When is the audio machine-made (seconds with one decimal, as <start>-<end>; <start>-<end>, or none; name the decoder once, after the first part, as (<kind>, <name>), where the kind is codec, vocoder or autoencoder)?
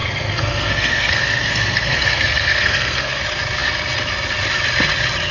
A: 0.0-3.2 (codec, SNAC)